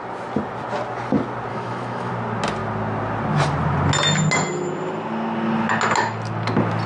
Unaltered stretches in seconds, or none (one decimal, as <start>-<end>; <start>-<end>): 0.0-1.5; 2.1-6.9